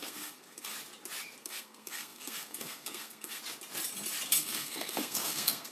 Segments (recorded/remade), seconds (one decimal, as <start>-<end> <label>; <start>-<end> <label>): 0.0-0.7 remade; 0.7-1.4 recorded; 1.4-3.4 remade; 3.4-4.4 recorded; 4.4-5.7 remade